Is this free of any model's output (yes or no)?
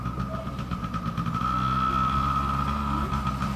yes